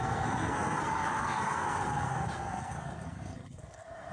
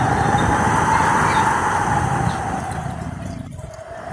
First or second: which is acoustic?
second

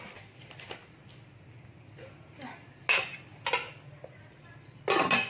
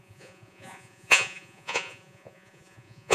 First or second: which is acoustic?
first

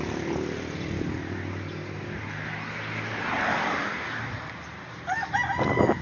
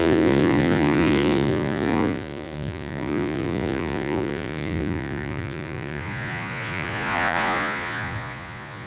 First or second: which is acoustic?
first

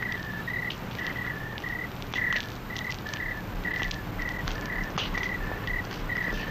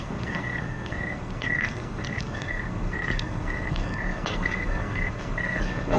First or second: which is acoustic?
first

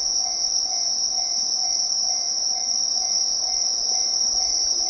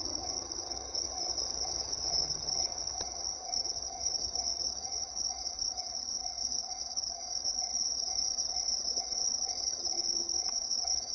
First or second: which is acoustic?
first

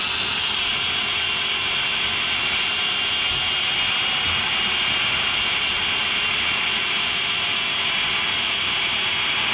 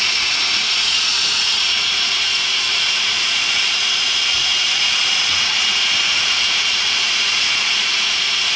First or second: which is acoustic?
first